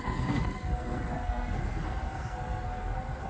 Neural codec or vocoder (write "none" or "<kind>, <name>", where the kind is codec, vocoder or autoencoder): codec, SNAC